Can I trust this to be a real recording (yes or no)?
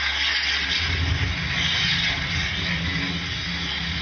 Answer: yes